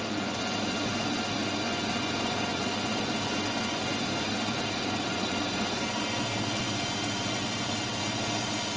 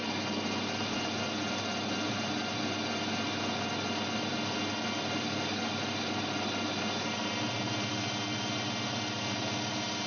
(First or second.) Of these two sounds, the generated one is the first